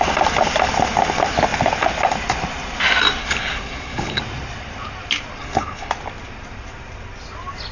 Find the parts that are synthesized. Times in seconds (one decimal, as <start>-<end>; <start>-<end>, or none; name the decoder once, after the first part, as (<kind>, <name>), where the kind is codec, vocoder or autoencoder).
3.2-4.2 (codec, HILCodec); 5.4-5.9